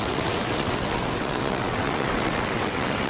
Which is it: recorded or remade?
remade